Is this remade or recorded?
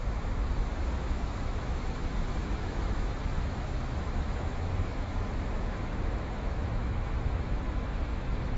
remade